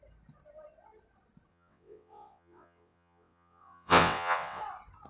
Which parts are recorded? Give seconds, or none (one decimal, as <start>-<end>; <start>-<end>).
0.0-1.5; 4.6-5.1